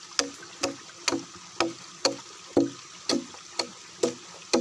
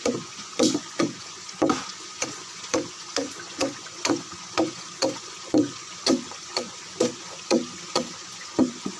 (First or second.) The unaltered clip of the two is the first